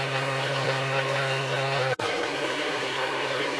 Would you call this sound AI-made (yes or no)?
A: yes